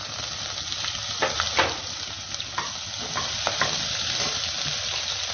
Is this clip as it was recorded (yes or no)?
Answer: yes